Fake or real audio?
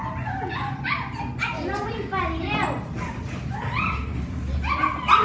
real